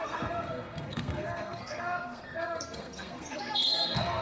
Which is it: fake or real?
fake